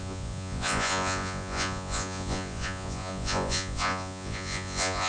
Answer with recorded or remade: remade